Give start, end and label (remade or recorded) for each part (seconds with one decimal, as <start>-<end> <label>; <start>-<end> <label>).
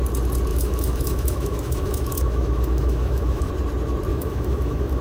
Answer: 0.0-0.5 recorded; 0.5-3.5 remade; 3.5-4.1 recorded; 4.1-5.0 remade